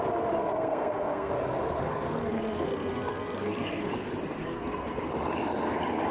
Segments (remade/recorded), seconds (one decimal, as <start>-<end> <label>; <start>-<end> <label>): 0.0-0.4 recorded; 0.4-1.3 remade; 1.3-1.8 recorded; 1.8-3.9 remade; 3.9-4.4 recorded; 4.4-5.0 remade; 5.0-6.1 recorded